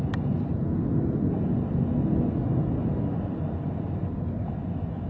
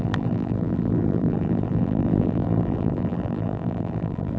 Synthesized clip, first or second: second